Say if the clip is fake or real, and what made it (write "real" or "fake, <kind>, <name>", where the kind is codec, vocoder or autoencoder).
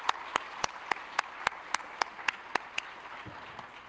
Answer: real